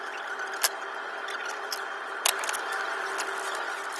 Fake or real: real